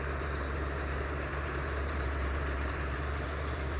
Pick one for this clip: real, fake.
fake